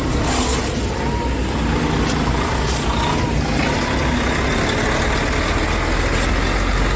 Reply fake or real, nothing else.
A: real